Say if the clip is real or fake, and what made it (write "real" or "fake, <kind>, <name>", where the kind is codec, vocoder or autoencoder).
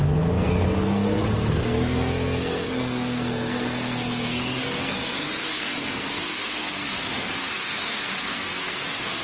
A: fake, codec, SNAC